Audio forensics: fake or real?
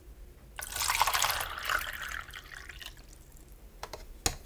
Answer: real